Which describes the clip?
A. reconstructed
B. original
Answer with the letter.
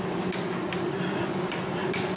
B